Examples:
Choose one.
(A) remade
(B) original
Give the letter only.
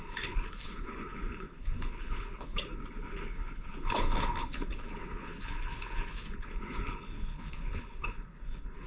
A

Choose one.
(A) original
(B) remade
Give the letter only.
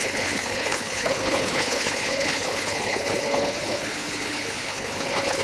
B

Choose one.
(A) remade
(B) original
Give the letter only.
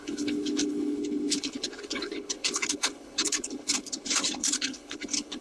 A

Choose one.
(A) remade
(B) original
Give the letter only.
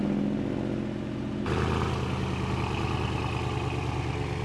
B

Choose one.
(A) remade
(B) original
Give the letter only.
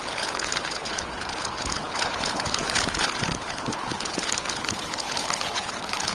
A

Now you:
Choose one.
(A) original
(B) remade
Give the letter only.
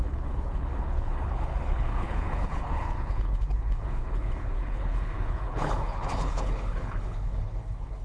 B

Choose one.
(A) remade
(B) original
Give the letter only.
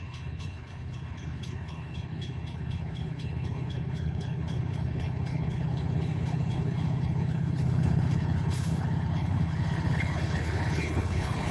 A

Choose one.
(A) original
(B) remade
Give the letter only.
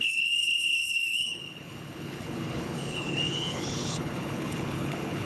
B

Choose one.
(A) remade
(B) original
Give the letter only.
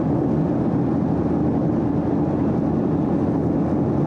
B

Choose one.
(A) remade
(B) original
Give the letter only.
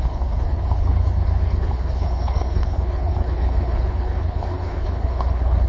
A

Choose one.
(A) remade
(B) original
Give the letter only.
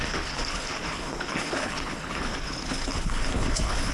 A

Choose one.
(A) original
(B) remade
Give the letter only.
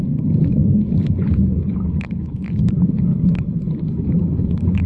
B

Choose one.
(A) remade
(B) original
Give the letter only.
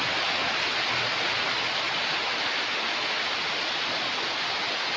B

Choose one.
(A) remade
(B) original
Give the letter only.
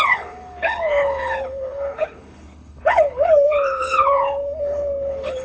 A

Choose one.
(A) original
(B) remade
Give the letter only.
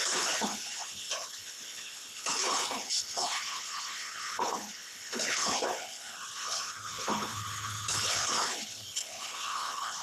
B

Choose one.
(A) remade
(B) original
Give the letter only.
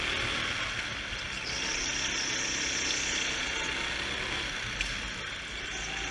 B